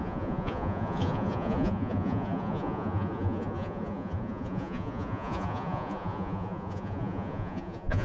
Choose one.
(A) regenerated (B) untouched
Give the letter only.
A